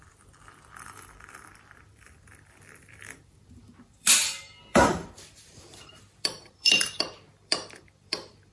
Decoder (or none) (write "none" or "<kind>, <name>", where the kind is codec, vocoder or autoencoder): vocoder, BigVGAN v2